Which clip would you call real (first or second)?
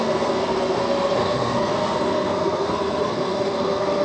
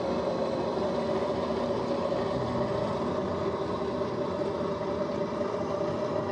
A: second